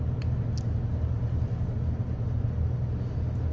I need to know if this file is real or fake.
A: real